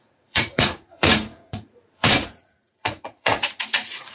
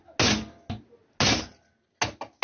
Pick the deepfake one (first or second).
first